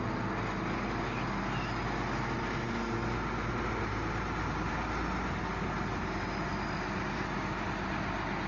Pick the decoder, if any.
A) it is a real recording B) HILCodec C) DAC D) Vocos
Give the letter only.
A